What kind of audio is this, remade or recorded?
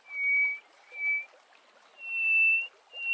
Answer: recorded